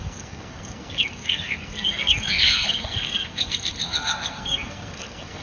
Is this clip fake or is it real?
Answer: fake